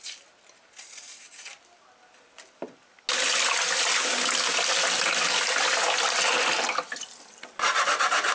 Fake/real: real